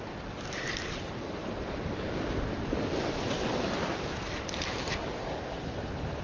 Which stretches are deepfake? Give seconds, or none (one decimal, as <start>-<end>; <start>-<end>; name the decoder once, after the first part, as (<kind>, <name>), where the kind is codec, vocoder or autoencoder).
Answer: none

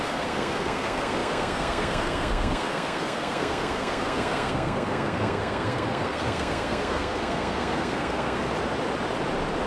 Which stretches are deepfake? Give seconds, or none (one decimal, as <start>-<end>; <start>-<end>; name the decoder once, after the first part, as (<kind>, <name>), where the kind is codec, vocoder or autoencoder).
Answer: 0.0-8.5 (codec, SNAC)

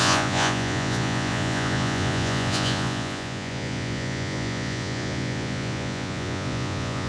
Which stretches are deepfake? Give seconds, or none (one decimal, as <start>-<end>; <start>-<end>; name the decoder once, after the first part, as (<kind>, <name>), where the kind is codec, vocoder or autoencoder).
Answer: 0.0-7.1 (vocoder, Vocos)